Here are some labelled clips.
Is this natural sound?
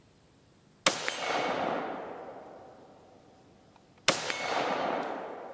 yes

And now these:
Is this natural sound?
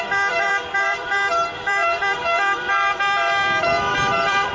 no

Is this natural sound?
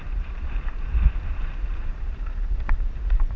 no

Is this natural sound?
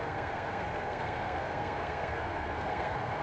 no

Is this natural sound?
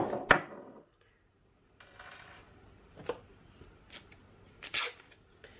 yes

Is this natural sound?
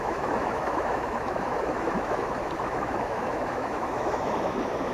no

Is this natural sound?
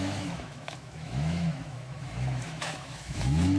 no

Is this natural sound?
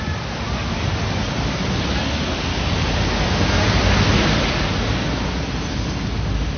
yes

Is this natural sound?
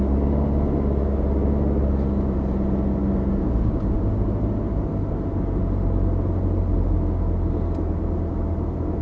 yes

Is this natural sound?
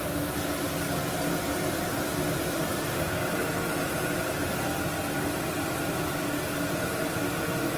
yes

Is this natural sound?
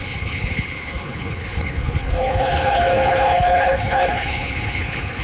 no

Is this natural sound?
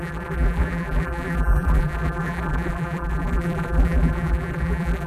no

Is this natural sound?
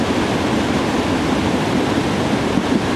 yes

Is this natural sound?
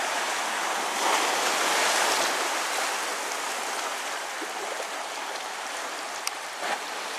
yes